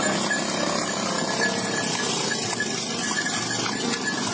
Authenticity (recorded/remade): recorded